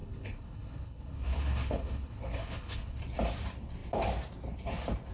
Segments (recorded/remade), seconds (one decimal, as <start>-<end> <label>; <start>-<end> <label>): 0.0-3.0 remade; 3.0-5.1 recorded